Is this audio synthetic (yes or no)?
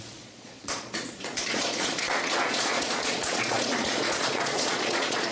yes